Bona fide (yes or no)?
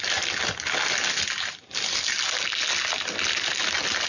yes